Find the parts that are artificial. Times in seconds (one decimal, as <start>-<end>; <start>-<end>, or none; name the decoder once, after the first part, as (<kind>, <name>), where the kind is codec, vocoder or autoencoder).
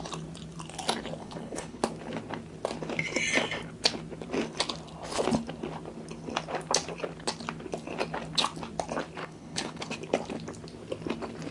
1.2-1.8 (codec, HILCodec); 9.2-9.9